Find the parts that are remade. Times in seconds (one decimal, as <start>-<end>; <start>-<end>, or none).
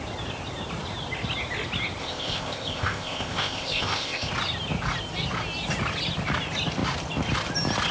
2.0-4.3